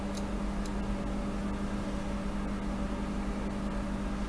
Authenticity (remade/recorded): recorded